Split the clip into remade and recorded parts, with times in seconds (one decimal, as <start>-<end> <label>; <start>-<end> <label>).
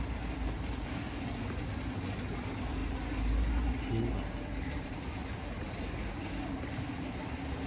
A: 0.0-7.7 recorded